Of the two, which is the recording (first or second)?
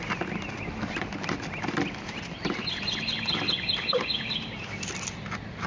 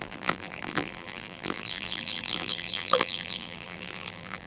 first